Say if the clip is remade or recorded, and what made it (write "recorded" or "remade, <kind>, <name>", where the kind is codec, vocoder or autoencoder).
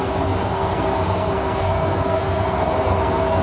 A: remade, codec, SNAC